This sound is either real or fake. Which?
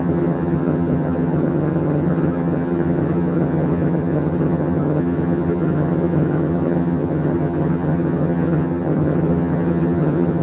fake